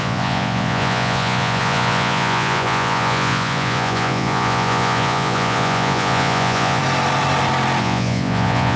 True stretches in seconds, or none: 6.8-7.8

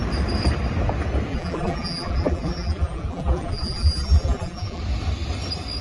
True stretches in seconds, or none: 0.0-1.3; 4.8-5.8

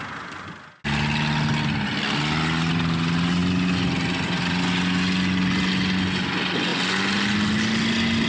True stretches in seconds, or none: 0.0-8.3